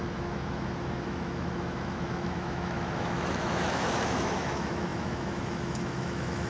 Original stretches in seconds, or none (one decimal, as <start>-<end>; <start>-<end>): none